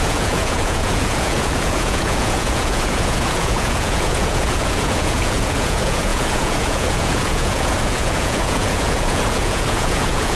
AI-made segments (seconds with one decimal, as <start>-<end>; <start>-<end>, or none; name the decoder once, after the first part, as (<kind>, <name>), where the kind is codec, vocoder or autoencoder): 0.0-10.4 (vocoder, Vocos)